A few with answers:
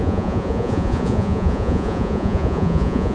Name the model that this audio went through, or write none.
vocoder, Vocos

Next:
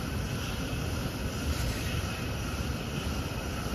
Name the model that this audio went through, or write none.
none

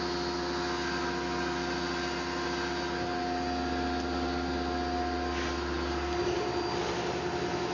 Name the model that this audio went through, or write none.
none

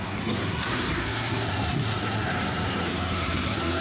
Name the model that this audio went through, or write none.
codec, SNAC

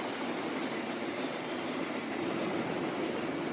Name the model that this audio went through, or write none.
none